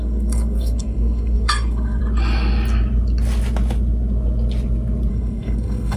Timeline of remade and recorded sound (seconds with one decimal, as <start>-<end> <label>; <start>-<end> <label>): 0.0-2.0 remade; 2.0-5.1 recorded; 5.1-6.0 remade